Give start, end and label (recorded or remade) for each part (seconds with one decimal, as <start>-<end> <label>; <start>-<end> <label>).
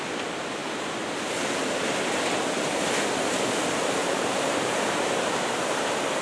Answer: 0.0-4.0 recorded; 4.0-5.8 remade; 5.8-6.2 recorded